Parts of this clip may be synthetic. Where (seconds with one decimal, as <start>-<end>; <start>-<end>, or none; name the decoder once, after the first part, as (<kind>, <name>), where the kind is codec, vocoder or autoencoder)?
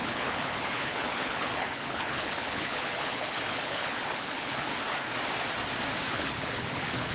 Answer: 0.0-4.7 (codec, HILCodec); 6.1-7.1